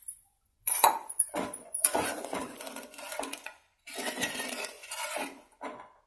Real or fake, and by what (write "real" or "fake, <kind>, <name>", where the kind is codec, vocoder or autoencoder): fake, vocoder, Vocos